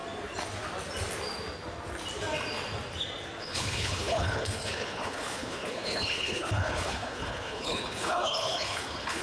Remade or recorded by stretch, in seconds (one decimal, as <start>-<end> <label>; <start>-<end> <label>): 0.0-3.4 recorded; 3.4-9.2 remade